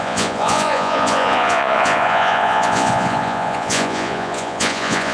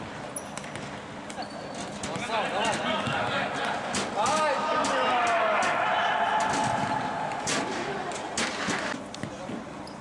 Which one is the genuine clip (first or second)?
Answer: second